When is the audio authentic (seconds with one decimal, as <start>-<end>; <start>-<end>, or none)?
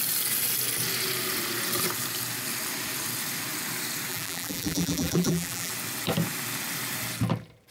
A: 0.0-4.1; 5.7-7.7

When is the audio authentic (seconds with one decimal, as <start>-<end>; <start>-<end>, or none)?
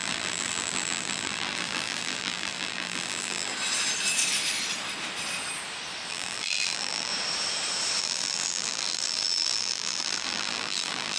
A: 3.5-6.1; 7.1-8.0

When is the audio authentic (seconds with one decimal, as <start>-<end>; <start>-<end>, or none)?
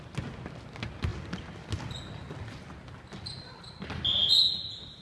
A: 0.0-5.0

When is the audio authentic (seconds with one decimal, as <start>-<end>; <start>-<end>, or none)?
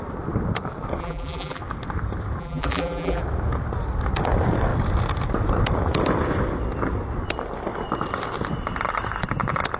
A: 0.0-1.0; 1.6-2.4; 3.2-9.8